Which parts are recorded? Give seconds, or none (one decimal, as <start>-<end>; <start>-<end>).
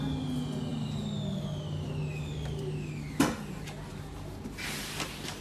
0.0-5.4